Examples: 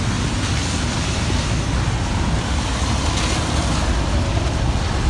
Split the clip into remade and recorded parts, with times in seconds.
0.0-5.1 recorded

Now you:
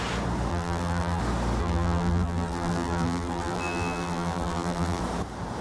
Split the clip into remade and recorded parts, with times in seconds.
0.0-0.5 recorded; 0.5-1.2 remade; 1.2-1.6 recorded; 1.6-5.0 remade; 5.0-5.6 recorded

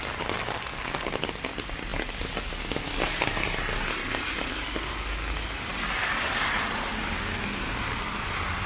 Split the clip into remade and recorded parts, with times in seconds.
0.0-8.7 recorded

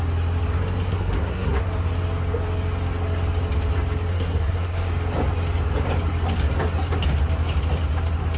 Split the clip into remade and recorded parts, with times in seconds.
0.0-0.9 recorded; 0.9-1.6 remade; 1.6-4.1 recorded; 4.1-4.9 remade; 4.9-8.4 recorded

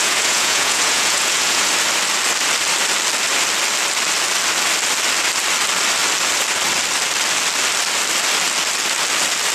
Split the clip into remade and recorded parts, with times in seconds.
0.0-1.7 remade; 1.7-9.5 recorded

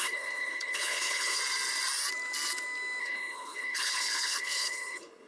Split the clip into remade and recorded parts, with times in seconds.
0.0-1.4 remade; 1.4-3.0 recorded; 3.0-5.3 remade

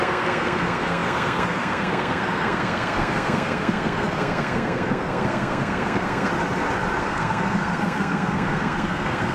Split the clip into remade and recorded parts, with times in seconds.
0.0-6.3 remade; 6.3-7.0 recorded; 7.0-9.3 remade

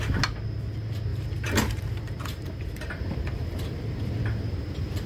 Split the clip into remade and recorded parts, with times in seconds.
0.0-1.1 recorded; 1.1-4.2 remade; 4.2-5.1 recorded